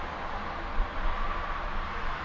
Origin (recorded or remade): recorded